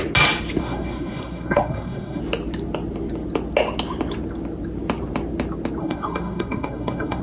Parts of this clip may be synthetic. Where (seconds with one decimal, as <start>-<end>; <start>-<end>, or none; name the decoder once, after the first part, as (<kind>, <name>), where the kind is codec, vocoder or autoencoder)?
0.6-2.2 (codec, SNAC); 5.8-7.2